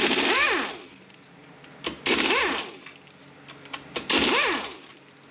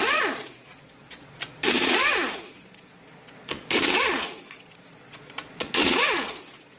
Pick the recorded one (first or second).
first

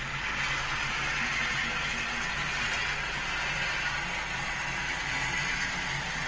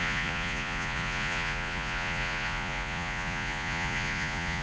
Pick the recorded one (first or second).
first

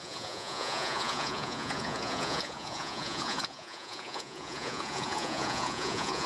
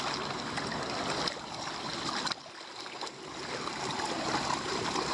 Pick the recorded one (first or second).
second